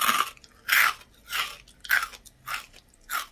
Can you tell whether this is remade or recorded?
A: recorded